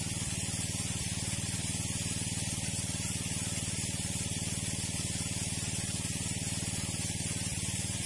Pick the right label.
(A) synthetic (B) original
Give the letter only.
B